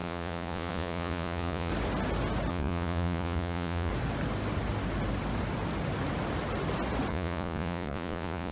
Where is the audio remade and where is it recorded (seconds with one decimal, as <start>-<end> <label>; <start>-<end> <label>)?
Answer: 0.0-1.7 remade; 1.7-2.5 recorded; 2.5-3.9 remade; 3.9-7.1 recorded; 7.1-8.5 remade